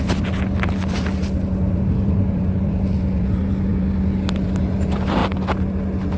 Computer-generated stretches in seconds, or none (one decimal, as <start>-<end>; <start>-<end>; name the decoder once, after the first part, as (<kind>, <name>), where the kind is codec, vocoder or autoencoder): none